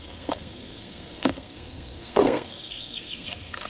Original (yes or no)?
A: no